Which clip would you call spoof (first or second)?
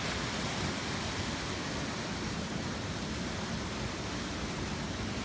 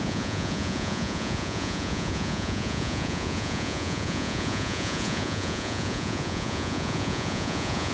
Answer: second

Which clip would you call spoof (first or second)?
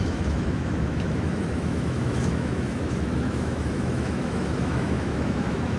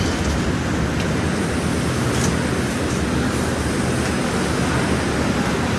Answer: first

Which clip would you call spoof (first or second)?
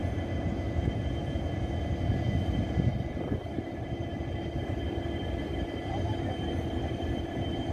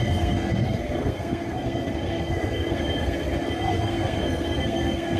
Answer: second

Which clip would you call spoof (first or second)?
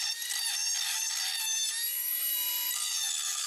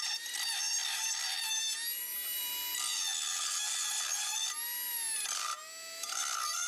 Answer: first